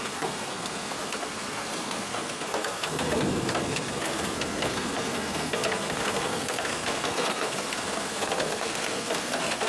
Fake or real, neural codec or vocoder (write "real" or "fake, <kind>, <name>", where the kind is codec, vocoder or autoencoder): fake, codec, SNAC